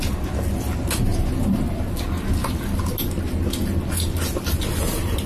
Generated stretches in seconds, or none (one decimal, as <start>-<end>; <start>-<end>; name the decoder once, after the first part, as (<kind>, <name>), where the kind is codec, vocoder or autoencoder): none